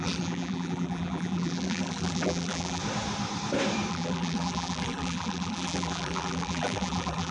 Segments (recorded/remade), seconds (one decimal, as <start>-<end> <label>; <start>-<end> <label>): 0.0-2.8 remade; 2.8-3.9 recorded; 3.9-7.3 remade